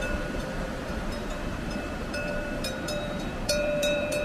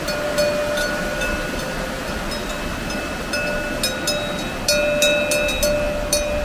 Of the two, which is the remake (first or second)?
first